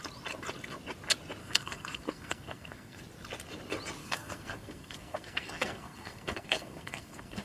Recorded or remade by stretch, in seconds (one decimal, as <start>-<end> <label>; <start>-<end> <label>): 0.0-1.4 recorded; 1.4-3.0 remade; 3.0-4.0 recorded; 4.0-7.4 remade